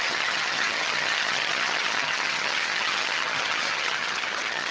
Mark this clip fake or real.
fake